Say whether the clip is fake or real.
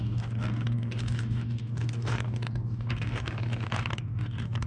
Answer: fake